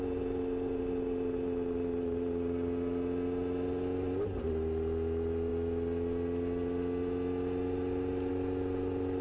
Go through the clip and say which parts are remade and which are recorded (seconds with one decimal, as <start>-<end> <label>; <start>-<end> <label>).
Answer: 0.0-9.2 recorded